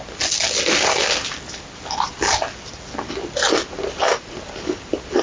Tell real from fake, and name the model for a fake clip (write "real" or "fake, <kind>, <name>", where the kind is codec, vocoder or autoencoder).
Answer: real